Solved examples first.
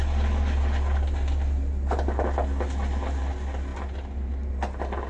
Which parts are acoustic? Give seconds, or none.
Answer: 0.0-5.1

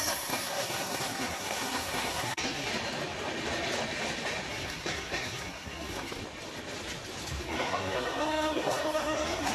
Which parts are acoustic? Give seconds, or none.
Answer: 2.7-4.5; 6.2-7.4